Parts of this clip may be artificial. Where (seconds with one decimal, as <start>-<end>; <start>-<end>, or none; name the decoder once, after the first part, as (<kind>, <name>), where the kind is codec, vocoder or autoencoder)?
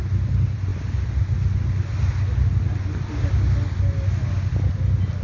none